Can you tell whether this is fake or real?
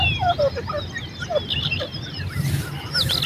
real